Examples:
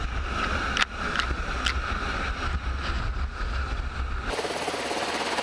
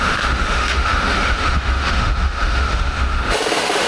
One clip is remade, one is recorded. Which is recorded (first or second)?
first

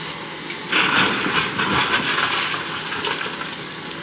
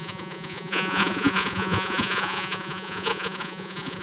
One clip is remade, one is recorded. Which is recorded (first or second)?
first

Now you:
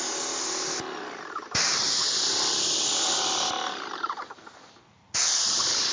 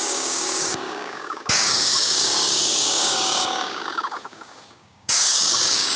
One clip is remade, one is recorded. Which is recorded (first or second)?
first